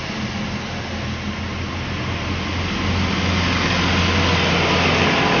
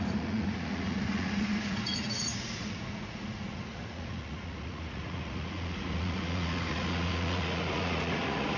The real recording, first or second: first